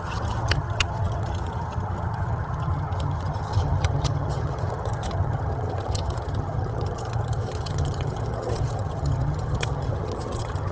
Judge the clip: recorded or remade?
remade